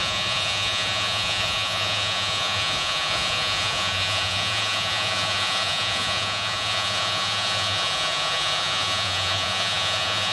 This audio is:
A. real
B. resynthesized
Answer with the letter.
B